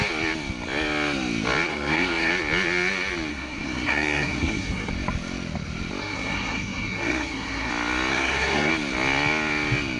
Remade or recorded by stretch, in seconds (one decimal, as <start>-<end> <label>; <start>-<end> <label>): 0.0-1.7 recorded; 1.7-2.3 remade; 2.3-3.3 recorded; 3.3-4.9 remade; 4.9-6.0 recorded; 6.0-7.7 remade; 7.7-8.1 recorded; 8.1-8.7 remade; 8.7-10.0 recorded